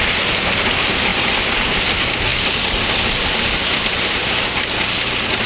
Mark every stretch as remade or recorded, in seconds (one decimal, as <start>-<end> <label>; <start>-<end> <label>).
0.0-2.3 recorded; 2.3-4.3 remade; 4.3-5.5 recorded